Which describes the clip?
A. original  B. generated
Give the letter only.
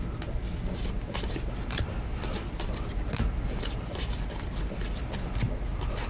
A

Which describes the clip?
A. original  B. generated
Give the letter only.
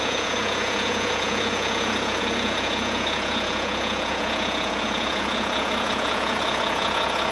B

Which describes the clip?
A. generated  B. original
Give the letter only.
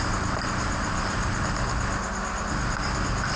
B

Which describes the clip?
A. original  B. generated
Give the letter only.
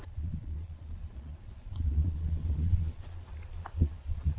B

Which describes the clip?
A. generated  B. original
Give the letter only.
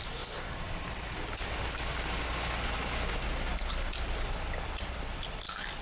B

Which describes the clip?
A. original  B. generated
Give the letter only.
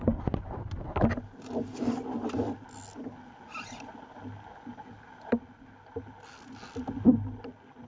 A